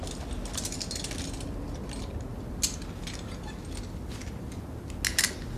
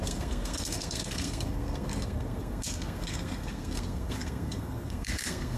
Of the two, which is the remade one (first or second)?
second